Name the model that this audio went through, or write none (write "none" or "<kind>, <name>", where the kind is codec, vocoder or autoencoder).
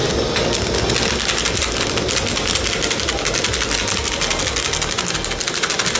none